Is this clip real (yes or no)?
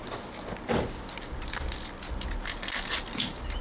yes